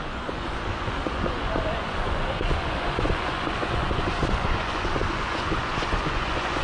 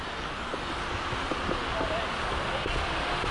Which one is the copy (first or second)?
first